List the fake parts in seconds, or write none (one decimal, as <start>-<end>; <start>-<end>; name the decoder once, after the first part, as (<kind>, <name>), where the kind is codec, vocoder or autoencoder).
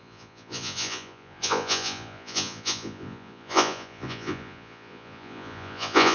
0.0-6.1 (vocoder, Vocos)